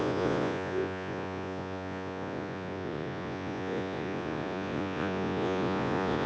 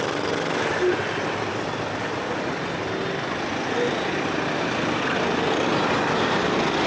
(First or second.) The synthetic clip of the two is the first